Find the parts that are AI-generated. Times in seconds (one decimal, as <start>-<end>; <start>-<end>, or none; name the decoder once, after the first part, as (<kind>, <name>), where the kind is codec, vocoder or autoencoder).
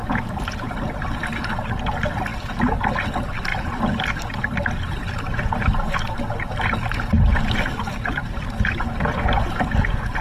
0.0-0.7 (vocoder, BigVGAN v2); 3.5-5.9